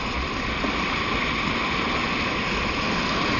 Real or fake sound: real